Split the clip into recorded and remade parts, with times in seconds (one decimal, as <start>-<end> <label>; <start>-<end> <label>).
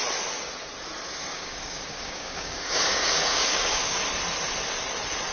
0.0-1.3 recorded; 1.3-4.0 remade; 4.0-5.3 recorded